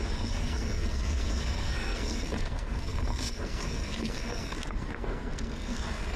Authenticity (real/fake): fake